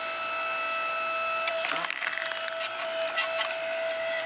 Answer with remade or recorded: recorded